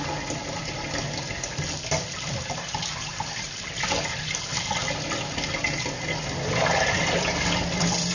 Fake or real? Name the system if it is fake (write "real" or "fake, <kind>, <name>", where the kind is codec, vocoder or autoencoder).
real